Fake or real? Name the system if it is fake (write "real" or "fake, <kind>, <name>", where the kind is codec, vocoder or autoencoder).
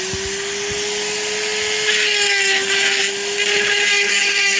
real